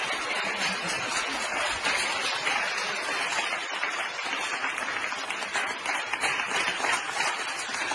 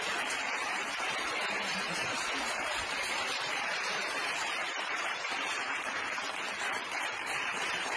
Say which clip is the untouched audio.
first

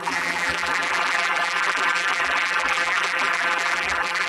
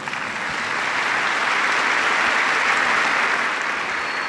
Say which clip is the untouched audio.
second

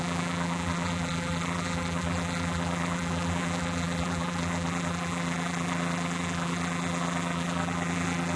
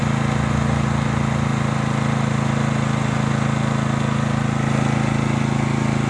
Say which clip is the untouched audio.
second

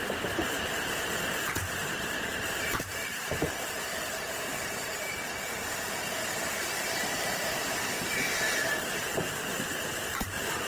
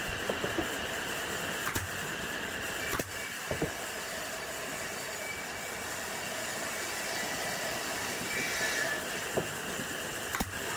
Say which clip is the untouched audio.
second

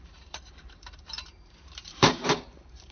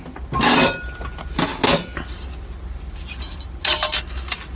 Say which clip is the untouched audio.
second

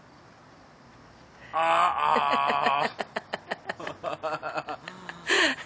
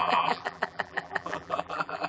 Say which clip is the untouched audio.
first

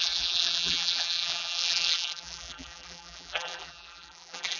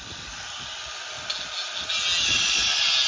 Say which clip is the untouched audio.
second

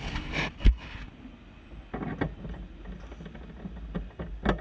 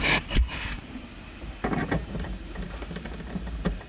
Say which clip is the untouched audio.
first